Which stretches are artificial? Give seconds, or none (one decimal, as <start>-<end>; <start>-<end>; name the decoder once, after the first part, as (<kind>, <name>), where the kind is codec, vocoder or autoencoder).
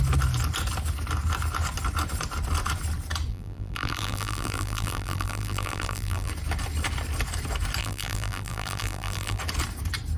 3.3-6.3 (vocoder, BigVGAN v2); 7.8-9.4